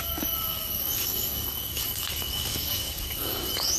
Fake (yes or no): yes